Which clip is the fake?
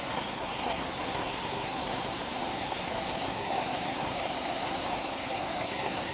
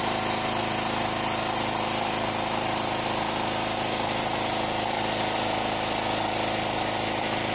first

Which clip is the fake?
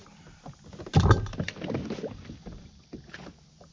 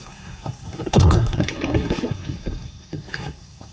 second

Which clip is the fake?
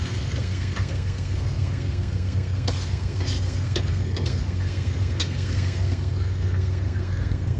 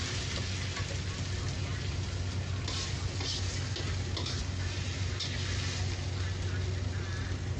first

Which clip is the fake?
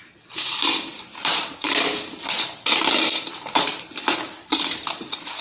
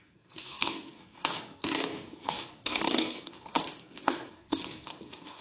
second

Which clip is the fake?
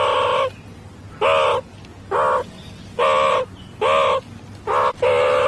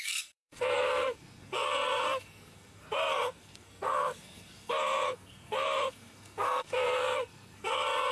second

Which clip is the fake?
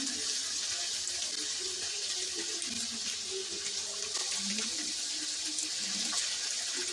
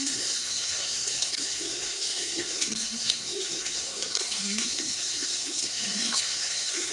second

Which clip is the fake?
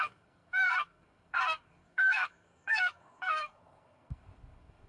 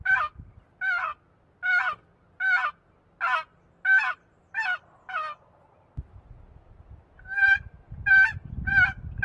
first